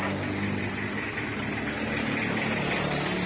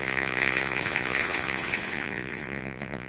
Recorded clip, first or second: first